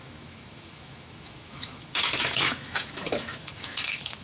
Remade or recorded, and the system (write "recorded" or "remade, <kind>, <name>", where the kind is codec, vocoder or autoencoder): remade, autoencoder, DAC-VAE